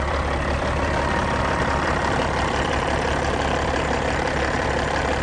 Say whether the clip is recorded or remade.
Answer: remade